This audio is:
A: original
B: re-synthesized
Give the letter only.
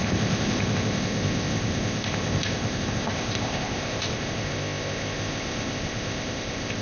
B